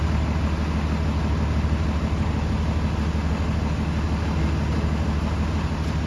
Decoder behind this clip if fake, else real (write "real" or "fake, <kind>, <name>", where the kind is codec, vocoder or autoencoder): real